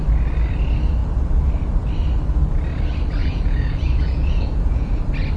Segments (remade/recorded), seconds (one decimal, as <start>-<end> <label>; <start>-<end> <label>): 0.0-3.2 recorded; 3.2-5.0 remade; 5.0-5.4 recorded